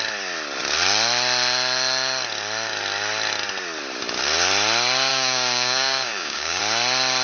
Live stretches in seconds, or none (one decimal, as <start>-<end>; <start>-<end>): 0.0-5.1; 6.6-7.2